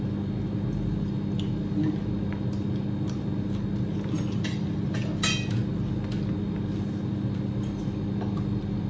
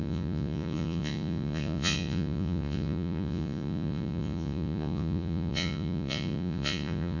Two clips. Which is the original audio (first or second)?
first